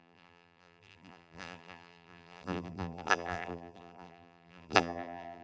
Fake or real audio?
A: fake